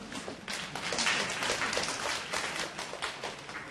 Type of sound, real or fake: real